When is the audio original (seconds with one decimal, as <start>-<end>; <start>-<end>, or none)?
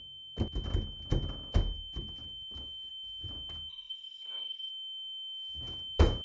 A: 0.0-3.7; 4.7-6.2